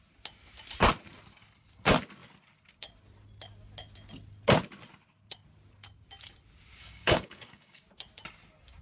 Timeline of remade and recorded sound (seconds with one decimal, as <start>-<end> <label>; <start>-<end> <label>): 0.0-6.8 recorded; 6.8-7.8 remade; 7.8-8.8 recorded

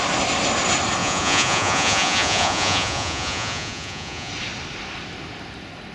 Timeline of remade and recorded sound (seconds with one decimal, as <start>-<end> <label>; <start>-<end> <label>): 0.0-1.0 recorded; 1.0-4.3 remade; 4.3-5.9 recorded

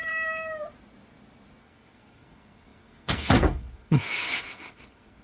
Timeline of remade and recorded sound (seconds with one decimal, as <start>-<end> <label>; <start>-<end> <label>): 0.0-1.6 recorded; 1.6-5.2 remade